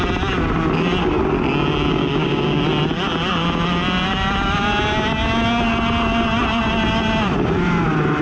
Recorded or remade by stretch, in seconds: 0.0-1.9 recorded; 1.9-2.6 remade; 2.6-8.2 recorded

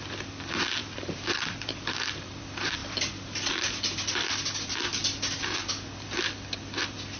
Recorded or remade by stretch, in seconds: 0.0-0.8 recorded; 0.8-2.4 remade; 2.4-7.2 recorded

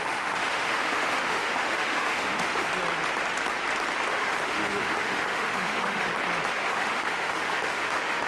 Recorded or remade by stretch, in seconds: 0.0-2.7 remade; 2.7-4.1 recorded; 4.1-6.1 remade; 6.1-6.6 recorded; 6.6-8.3 remade

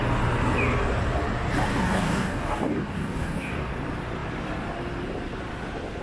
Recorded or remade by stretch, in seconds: 0.0-1.7 recorded; 1.7-3.7 remade; 3.7-6.0 recorded

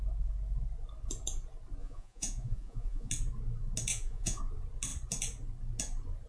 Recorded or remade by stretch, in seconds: 0.0-1.8 recorded; 1.8-3.1 remade; 3.1-3.9 recorded; 3.9-4.4 remade; 4.4-6.3 recorded

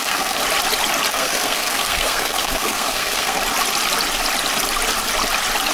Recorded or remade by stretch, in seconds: 0.0-0.4 remade; 0.4-1.1 recorded; 1.1-3.4 remade; 3.4-5.7 recorded

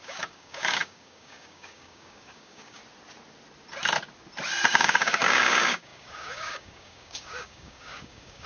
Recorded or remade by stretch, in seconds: 0.0-2.8 remade; 2.8-4.7 recorded; 4.7-8.5 remade